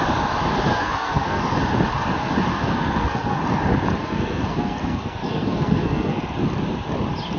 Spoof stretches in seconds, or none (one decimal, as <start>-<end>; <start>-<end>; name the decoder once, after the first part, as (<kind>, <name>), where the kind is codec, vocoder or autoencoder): 0.7-1.4 (codec, SNAC); 2.5-3.4; 4.0-6.2

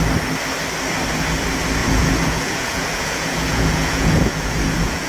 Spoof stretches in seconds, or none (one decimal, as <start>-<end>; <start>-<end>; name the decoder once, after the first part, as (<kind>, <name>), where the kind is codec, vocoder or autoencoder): 1.8-5.1 (vocoder, Vocos)

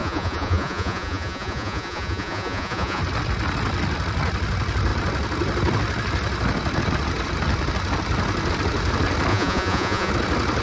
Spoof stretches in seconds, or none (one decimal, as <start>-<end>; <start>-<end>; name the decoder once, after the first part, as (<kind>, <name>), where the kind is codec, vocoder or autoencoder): 0.0-3.0 (vocoder, Vocos); 9.3-10.1

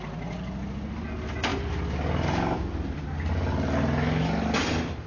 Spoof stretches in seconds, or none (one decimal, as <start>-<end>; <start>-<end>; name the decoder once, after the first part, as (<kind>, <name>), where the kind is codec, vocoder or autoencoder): none

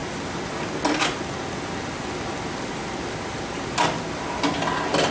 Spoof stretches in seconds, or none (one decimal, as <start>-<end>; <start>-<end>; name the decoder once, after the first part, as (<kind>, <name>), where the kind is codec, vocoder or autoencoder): none

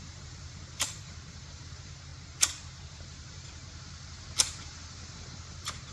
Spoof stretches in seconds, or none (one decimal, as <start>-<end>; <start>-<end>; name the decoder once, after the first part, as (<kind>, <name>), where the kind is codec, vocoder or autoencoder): 0.0-2.1 (vocoder, BigVGAN v2); 2.9-3.6; 4.6-5.9

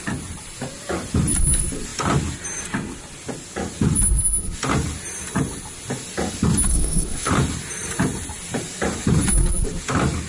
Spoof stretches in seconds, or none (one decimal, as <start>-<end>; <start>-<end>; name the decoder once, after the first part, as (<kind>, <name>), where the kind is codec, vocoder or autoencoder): 6.7-7.3 (codec, SNAC)